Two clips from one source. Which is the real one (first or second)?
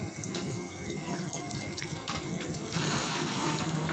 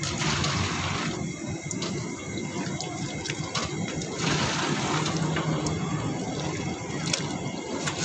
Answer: second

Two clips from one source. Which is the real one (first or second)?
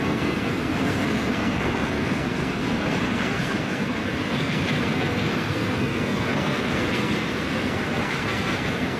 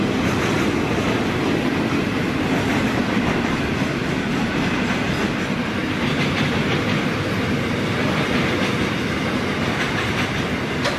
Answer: second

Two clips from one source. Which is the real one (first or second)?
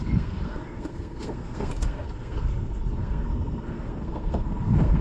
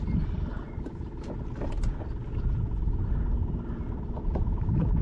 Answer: second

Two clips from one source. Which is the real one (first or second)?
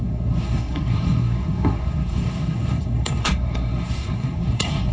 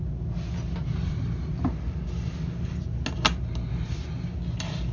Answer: second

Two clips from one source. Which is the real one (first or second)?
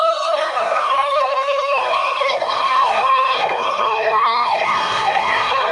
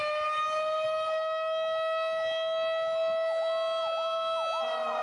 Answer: second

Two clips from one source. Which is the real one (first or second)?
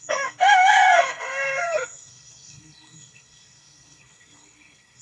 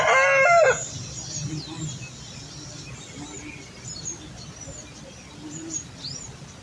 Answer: second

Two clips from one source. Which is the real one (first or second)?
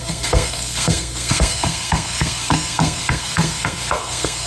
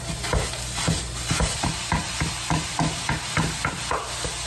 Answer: second